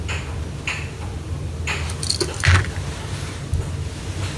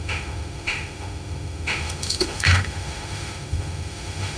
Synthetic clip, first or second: second